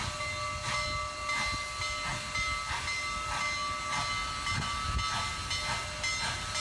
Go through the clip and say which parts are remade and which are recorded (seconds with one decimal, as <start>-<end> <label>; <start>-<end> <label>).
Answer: 0.0-6.6 recorded